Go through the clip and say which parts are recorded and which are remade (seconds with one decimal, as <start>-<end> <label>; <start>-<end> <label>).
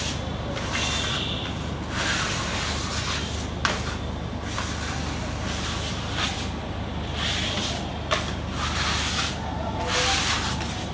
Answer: 0.0-10.9 recorded